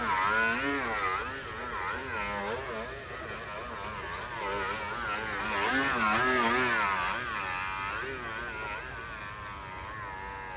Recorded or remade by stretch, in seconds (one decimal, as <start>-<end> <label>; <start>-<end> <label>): 0.0-10.6 recorded